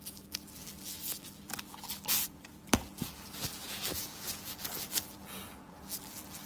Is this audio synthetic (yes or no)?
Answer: yes